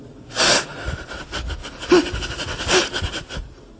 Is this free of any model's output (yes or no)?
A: yes